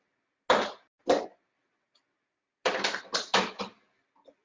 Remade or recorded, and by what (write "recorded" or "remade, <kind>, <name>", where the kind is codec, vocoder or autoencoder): recorded